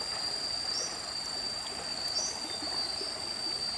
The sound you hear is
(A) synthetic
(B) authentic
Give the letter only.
B